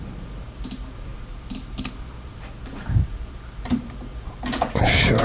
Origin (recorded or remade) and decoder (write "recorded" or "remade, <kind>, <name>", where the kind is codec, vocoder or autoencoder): remade, vocoder, BigVGAN v2